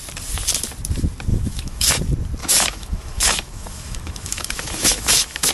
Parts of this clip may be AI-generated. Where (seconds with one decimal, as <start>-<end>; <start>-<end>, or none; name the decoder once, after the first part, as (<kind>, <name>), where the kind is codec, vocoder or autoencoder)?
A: 1.3-1.9 (autoencoder, DAC-VAE); 2.4-5.5

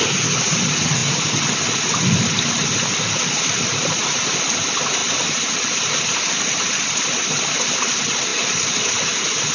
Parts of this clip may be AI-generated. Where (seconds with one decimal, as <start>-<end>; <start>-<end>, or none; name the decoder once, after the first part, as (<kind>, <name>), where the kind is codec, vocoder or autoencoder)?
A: none

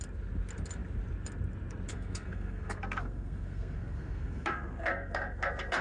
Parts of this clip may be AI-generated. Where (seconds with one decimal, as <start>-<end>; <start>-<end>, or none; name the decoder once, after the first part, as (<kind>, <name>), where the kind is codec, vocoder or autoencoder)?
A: 1.9-5.8 (codec, SNAC)

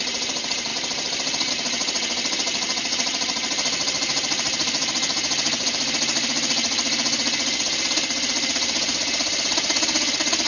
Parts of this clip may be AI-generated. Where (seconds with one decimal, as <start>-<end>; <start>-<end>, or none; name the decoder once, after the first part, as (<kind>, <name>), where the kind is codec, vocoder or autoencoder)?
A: none

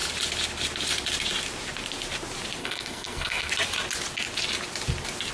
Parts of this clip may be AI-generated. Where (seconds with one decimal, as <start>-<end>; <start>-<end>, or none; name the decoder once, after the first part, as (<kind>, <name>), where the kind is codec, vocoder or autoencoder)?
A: 2.6-3.5 (codec, SNAC)

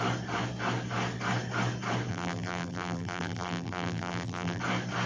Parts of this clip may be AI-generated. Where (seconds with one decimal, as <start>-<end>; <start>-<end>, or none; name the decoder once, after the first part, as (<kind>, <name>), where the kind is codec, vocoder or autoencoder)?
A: 2.1-4.6 (vocoder, BigVGAN v2)

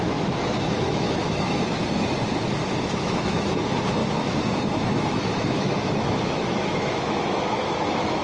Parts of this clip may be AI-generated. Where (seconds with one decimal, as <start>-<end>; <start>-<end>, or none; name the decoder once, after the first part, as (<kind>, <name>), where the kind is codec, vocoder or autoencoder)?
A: 0.0-1.8 (autoencoder, DAC-VAE); 3.0-8.2